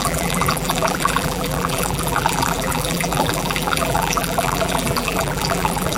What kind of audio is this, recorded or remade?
remade